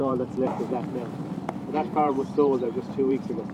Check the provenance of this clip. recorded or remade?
remade